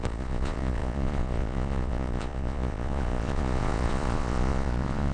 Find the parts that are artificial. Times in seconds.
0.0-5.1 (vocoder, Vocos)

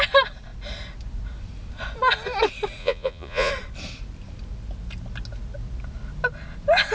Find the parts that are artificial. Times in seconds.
2.8-3.5 (vocoder, Vocos)

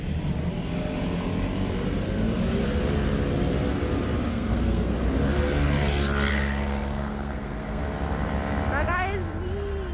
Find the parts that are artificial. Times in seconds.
4.3-4.9 (codec, SNAC); 6.3-7.8

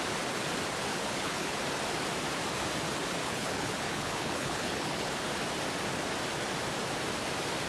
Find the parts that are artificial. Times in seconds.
0.9-1.6 (codec, HILCodec); 3.2-5.1